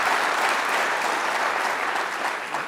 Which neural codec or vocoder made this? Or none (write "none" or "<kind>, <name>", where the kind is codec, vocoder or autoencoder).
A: none